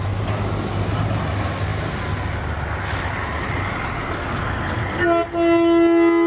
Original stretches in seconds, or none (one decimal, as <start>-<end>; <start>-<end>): 0.0-6.3